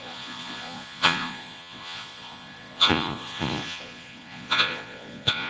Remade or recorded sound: remade